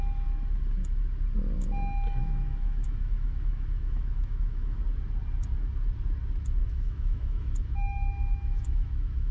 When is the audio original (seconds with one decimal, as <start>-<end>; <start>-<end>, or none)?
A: 0.0-2.2; 4.8-6.6